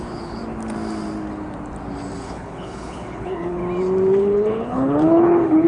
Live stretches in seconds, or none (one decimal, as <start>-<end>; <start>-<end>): 0.4-2.2; 3.6-4.2